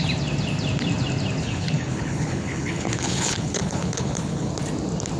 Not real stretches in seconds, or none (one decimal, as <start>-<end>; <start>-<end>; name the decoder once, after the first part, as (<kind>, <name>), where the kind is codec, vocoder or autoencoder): 1.4-4.5 (codec, HILCodec)